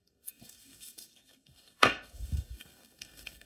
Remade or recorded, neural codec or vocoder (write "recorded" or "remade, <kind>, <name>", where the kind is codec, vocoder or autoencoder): remade, codec, SNAC